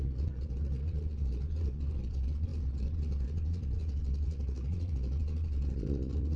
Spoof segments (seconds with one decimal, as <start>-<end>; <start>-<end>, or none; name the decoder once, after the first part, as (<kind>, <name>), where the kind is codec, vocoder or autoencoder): 0.0-6.4 (vocoder, Vocos)